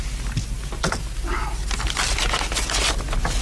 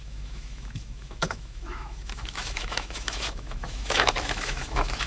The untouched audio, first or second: first